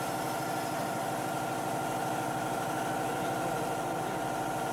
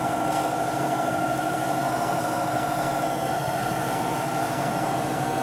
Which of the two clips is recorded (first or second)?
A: first